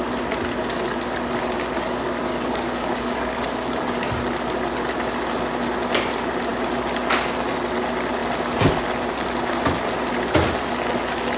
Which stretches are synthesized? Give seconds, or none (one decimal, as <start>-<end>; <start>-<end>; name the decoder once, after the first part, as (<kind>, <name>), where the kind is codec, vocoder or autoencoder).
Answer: 2.3-4.1 (codec, DAC)